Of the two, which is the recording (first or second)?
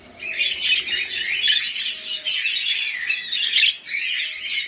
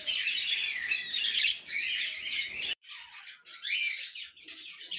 first